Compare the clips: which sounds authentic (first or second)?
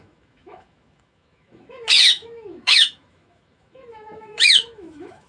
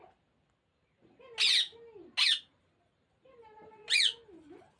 second